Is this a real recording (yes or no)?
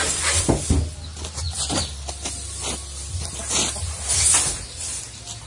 yes